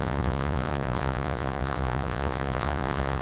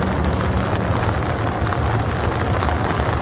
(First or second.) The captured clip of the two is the second